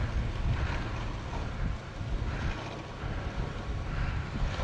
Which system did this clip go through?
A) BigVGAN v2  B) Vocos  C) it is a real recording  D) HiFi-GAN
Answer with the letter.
C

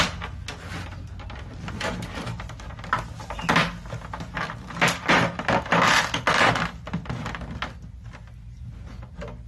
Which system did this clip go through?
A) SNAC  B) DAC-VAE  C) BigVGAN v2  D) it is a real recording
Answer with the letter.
D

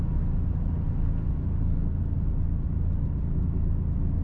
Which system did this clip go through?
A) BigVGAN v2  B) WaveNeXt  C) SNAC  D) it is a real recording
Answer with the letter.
D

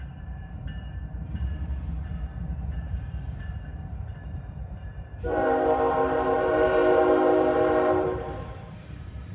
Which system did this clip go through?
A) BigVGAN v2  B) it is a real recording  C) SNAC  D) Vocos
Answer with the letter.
A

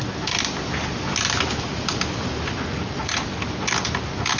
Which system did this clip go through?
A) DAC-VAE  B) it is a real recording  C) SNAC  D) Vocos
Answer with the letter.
B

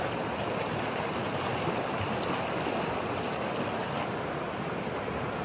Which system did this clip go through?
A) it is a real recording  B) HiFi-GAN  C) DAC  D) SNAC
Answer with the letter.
A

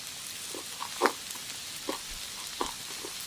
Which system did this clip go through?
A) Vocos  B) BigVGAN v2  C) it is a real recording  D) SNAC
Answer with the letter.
C